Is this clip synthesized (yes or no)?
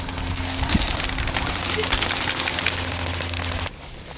no